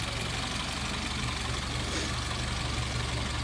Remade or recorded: recorded